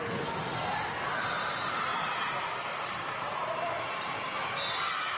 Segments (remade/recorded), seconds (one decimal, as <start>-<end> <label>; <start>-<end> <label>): 0.0-5.2 remade